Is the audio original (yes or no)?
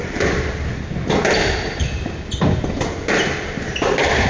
yes